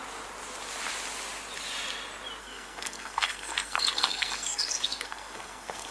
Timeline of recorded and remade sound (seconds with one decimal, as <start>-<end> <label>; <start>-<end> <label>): 0.0-2.4 recorded; 2.4-5.9 remade